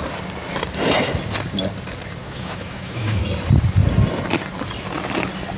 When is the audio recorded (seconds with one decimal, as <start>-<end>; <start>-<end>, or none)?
0.0-2.2; 3.2-5.6